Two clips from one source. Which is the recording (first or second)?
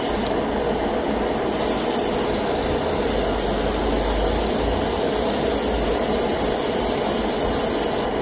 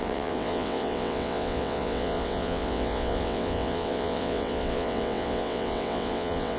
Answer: first